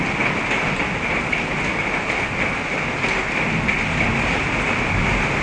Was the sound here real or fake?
real